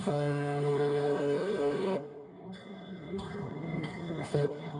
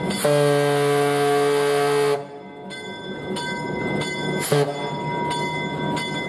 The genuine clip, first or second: second